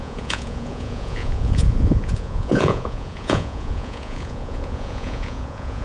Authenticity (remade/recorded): remade